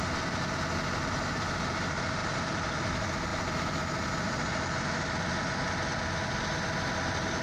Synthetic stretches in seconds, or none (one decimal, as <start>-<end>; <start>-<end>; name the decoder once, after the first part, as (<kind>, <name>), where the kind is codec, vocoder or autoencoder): 2.2-2.9 (vocoder, BigVGAN v2)